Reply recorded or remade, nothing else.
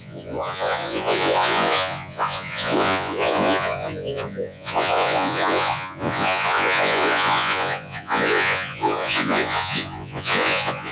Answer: remade